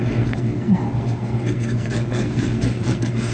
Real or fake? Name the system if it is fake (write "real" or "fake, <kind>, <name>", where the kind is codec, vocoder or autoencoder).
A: fake, codec, SNAC